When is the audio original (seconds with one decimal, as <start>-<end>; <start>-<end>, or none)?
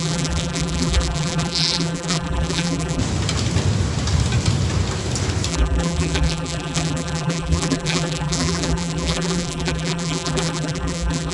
3.0-5.5